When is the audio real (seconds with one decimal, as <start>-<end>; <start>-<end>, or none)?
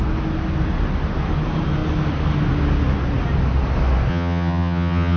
0.0-4.1